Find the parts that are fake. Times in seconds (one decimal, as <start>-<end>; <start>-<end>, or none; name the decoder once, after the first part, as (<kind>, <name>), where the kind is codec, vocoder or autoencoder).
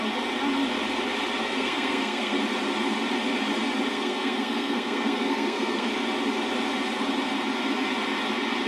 1.4-2.4 (codec, SNAC); 3.9-5.9